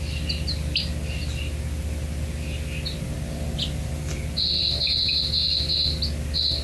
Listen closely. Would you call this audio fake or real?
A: real